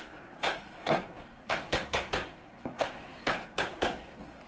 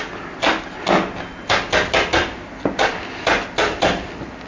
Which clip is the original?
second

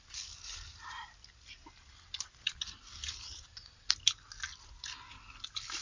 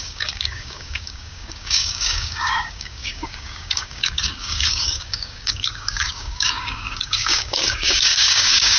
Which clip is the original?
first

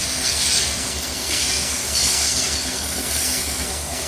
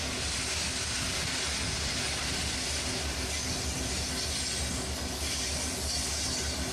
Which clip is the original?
second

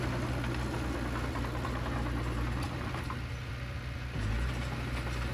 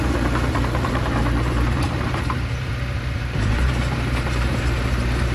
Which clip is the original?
first